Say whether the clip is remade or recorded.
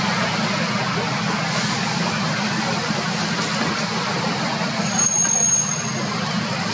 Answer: recorded